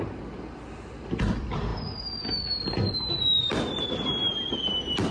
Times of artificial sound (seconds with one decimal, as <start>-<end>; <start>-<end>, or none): none